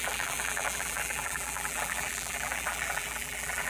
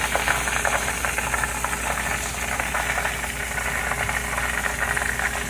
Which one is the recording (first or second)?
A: second